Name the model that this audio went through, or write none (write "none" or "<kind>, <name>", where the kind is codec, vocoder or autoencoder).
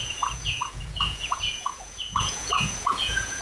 vocoder, Vocos